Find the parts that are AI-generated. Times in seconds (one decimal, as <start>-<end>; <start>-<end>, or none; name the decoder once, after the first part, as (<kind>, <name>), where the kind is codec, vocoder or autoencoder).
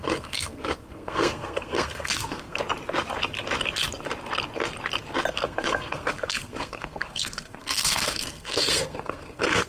0.0-2.6 (codec, SNAC); 5.3-9.7